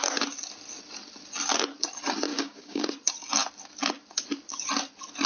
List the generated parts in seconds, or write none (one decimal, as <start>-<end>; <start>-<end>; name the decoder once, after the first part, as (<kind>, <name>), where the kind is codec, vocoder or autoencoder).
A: 2.3-2.8 (codec, DAC)